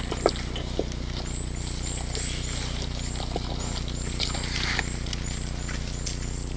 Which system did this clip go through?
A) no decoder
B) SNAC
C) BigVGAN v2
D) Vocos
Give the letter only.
A